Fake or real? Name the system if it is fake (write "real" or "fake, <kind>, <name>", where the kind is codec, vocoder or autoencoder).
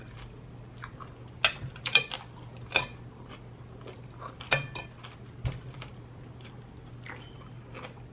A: real